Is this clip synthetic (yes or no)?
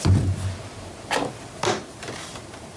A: yes